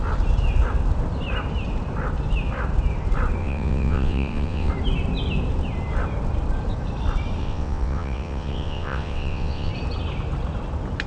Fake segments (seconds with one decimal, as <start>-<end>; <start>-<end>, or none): 3.4-4.7; 7.4-9.7